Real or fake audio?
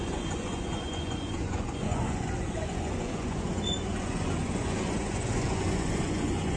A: fake